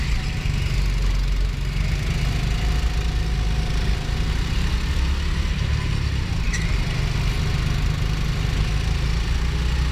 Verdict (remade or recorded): recorded